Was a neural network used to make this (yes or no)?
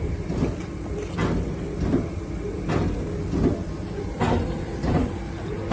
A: no